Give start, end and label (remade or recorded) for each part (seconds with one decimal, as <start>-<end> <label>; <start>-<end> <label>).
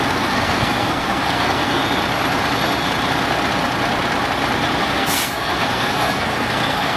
0.0-1.8 remade; 1.8-4.8 recorded; 4.8-7.0 remade